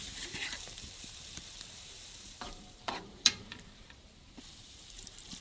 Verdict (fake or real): fake